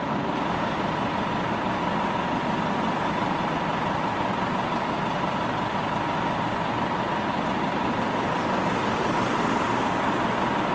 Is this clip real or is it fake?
real